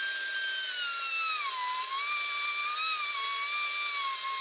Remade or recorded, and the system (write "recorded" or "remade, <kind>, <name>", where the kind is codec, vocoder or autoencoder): recorded